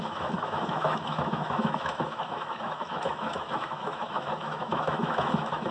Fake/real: fake